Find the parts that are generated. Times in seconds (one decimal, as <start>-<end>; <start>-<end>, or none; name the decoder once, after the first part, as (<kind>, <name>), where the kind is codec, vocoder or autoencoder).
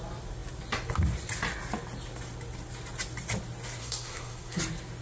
3.8-4.6 (codec, SNAC)